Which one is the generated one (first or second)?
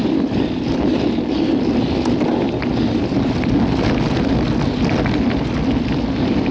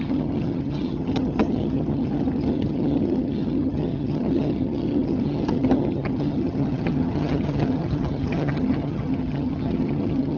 second